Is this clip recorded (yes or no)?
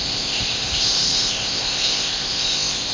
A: no